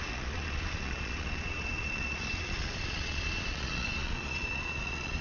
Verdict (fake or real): fake